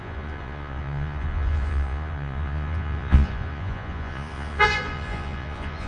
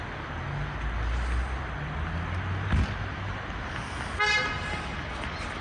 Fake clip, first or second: first